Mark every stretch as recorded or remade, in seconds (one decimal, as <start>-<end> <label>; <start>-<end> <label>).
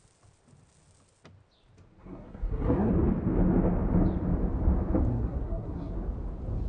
0.0-2.0 recorded; 2.0-2.9 remade; 2.9-5.1 recorded; 5.1-5.9 remade; 5.9-6.7 recorded